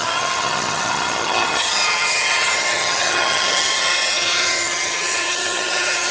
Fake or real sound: fake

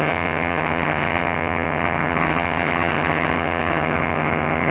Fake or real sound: fake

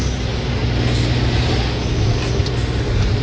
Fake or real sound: real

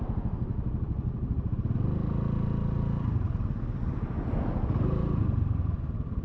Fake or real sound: real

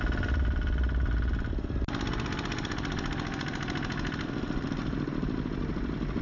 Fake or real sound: real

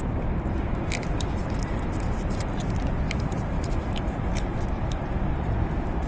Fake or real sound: real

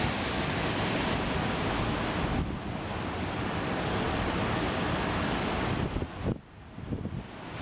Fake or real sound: real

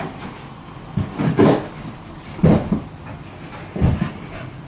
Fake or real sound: real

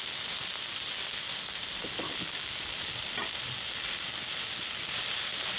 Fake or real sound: real